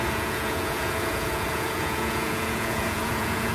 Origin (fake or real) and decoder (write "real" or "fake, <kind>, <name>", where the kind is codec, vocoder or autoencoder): fake, vocoder, Vocos